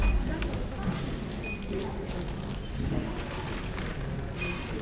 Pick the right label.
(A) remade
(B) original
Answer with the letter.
B